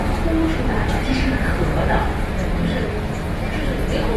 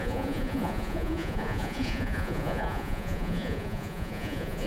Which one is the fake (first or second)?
second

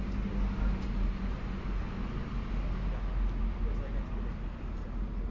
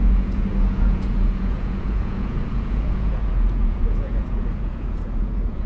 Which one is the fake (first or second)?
second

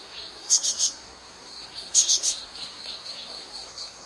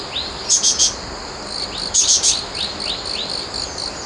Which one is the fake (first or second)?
first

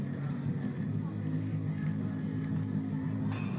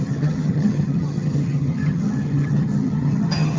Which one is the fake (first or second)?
second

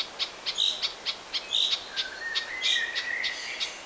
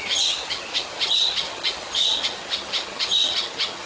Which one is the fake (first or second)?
second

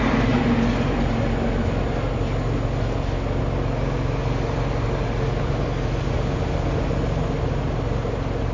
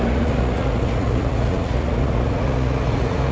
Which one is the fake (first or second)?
second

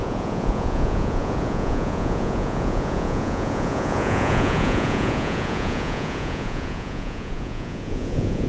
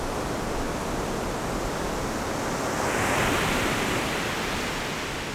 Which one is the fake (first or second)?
first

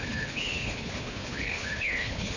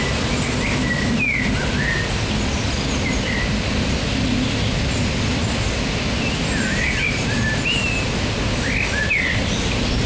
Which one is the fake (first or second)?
first